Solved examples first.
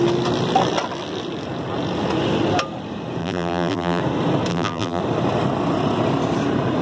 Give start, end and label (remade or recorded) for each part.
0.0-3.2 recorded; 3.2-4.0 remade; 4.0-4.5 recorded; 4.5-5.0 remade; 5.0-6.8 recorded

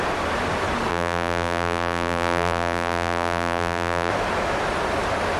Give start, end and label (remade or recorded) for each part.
0.0-0.9 recorded; 0.9-4.1 remade; 4.1-5.4 recorded

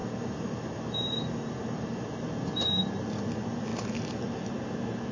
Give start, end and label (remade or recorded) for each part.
0.0-5.1 remade

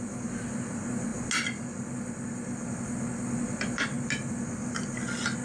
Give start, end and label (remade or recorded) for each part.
0.0-5.4 recorded

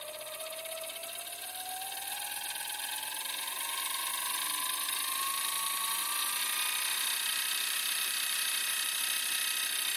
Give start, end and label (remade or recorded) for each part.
0.0-7.3 recorded; 7.3-9.0 remade; 9.0-10.0 recorded